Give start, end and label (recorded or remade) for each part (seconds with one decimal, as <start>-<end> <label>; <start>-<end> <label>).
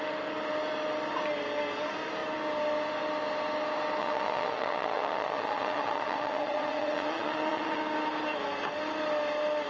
0.0-4.0 recorded; 4.0-7.8 remade; 7.8-9.7 recorded